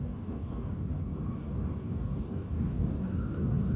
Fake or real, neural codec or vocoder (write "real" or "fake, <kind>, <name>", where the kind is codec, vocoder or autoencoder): fake, codec, DAC